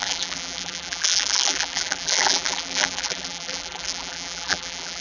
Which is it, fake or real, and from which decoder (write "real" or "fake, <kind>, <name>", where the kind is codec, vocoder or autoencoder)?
fake, vocoder, BigVGAN v2